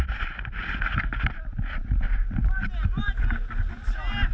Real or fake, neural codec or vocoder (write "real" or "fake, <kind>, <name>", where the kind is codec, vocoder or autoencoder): real